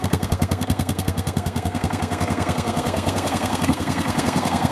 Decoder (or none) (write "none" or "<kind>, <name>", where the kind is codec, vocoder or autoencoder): codec, SNAC